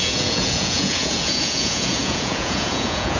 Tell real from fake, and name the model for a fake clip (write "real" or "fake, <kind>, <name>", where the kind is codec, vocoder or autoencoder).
fake, vocoder, Vocos